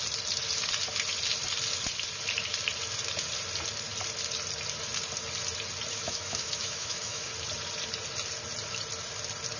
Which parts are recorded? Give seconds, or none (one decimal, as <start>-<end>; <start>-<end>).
0.0-5.9; 7.3-9.6